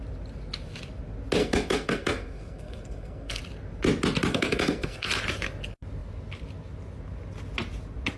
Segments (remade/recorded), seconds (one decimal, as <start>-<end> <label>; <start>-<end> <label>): 0.0-1.4 recorded; 1.4-3.4 remade; 3.4-4.3 recorded; 4.3-5.1 remade; 5.1-8.2 recorded